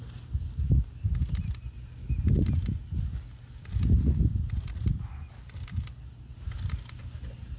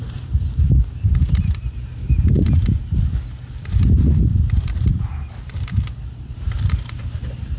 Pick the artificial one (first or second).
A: second